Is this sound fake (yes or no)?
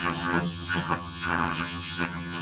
yes